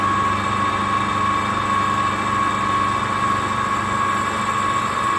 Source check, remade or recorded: recorded